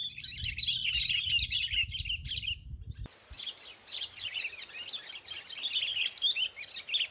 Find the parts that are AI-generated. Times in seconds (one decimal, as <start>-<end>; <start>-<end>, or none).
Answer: 0.0-1.3; 3.8-4.4